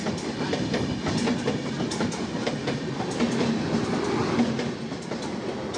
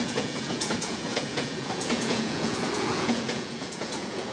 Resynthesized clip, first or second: second